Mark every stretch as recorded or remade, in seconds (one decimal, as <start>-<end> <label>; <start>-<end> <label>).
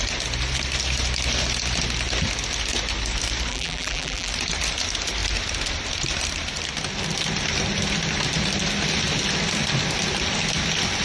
0.0-3.5 recorded; 3.5-4.3 remade; 4.3-11.0 recorded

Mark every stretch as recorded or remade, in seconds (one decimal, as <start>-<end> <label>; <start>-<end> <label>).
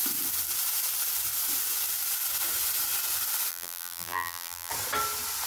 0.0-3.5 recorded; 3.5-4.7 remade; 4.7-5.5 recorded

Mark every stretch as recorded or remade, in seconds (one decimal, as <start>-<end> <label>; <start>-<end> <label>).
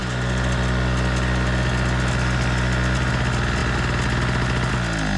0.0-5.2 recorded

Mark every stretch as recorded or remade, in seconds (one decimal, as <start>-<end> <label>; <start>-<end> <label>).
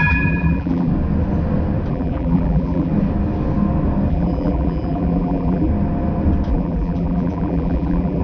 0.0-0.9 remade; 0.9-1.9 recorded; 1.9-2.9 remade; 2.9-4.1 recorded; 4.1-5.7 remade; 5.7-6.5 recorded; 6.5-8.2 remade